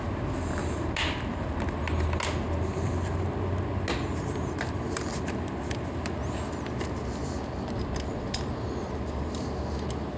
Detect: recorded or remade recorded